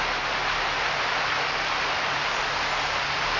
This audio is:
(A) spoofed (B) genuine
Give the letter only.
B